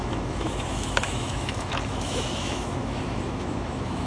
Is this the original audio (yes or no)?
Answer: no